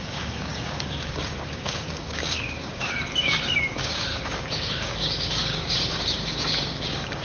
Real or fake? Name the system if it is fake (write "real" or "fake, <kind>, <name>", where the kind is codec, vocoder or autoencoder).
fake, codec, DAC